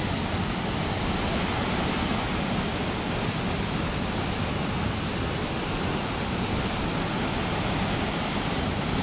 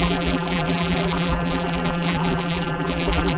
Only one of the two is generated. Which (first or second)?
second